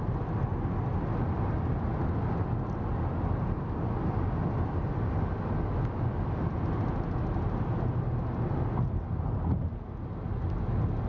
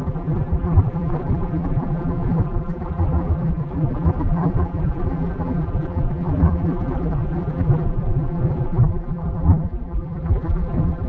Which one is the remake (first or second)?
second